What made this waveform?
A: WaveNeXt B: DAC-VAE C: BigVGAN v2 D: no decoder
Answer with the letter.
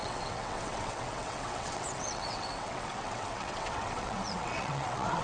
A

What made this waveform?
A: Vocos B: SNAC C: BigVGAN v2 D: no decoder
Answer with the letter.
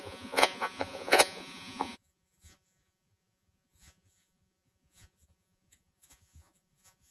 A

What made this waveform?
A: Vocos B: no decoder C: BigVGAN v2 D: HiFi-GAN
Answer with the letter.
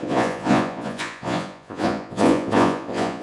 A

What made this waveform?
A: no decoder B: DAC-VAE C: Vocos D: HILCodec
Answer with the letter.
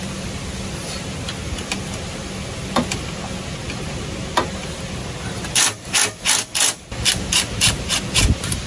A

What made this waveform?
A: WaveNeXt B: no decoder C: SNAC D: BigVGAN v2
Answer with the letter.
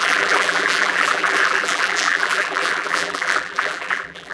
D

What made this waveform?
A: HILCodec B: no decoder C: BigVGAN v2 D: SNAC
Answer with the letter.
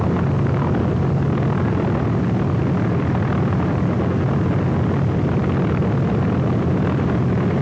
B